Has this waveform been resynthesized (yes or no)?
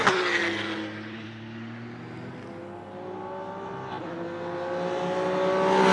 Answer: no